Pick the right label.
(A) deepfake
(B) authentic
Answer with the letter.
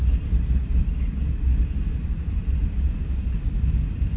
B